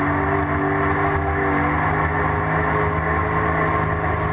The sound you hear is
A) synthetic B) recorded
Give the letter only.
B